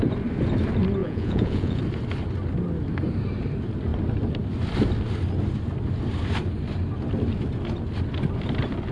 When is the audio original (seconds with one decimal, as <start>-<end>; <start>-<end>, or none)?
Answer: 0.0-1.0; 1.8-8.9